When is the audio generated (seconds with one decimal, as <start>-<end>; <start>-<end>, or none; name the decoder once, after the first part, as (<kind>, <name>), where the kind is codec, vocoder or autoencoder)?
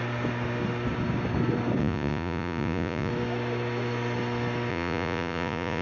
1.8-3.1 (vocoder, Vocos); 4.7-5.8